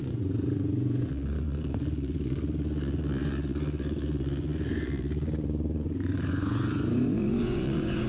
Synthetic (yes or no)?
yes